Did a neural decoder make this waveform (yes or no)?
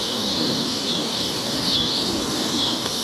yes